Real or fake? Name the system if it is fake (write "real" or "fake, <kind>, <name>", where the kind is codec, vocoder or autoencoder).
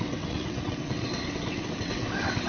fake, vocoder, WaveNeXt